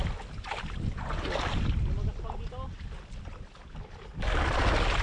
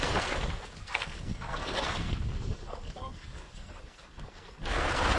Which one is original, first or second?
first